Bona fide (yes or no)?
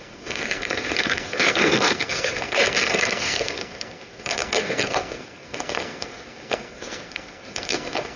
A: no